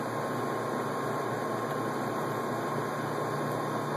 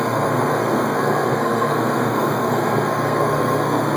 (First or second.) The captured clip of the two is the first